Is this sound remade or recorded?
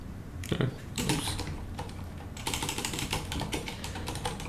remade